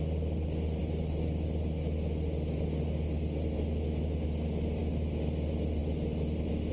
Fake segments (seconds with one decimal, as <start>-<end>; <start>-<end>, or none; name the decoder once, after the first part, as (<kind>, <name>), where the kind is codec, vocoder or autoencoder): none